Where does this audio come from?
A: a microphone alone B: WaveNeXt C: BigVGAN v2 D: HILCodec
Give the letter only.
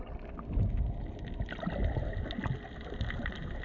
A